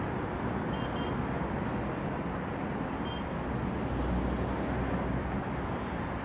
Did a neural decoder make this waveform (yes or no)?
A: no